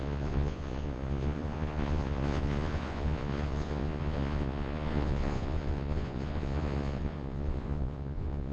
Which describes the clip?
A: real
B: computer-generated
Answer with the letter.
B